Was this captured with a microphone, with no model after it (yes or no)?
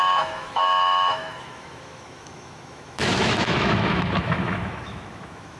no